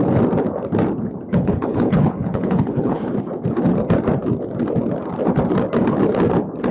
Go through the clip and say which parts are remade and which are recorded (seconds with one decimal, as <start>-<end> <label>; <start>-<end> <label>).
0.0-1.3 recorded; 1.3-3.0 remade; 3.0-6.7 recorded